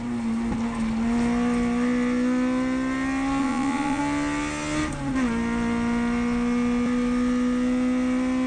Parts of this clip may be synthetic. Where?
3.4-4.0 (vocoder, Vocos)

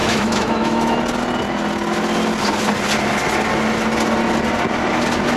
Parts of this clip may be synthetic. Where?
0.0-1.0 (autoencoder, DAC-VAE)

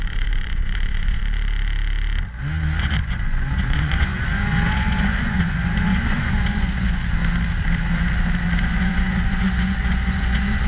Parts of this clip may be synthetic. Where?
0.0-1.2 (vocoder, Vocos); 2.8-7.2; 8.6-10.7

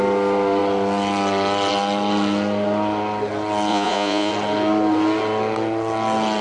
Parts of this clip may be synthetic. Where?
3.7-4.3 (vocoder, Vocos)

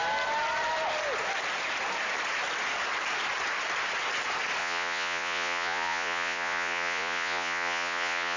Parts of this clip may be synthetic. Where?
4.6-8.4 (vocoder, Vocos)

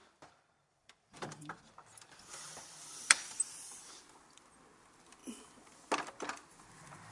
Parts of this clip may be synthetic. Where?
0.0-4.0 (vocoder, BigVGAN v2)

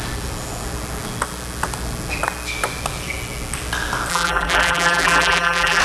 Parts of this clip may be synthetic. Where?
4.1-5.8 (vocoder, BigVGAN v2)

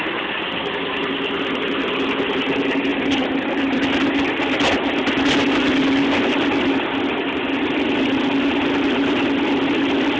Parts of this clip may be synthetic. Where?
none